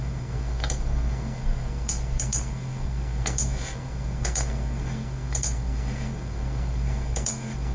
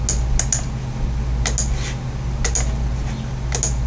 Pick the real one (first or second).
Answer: second